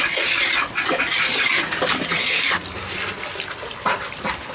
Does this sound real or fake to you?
real